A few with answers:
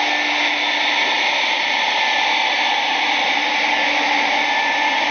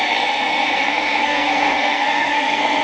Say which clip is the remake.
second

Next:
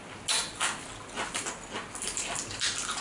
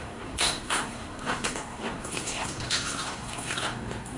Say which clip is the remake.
second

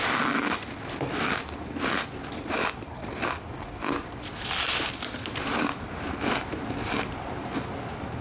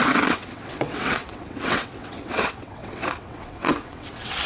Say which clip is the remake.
second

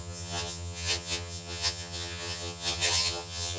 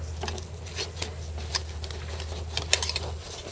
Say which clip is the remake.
first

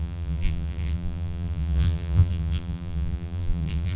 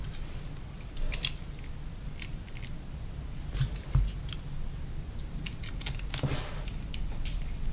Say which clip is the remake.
first